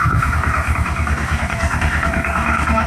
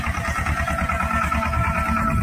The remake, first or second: first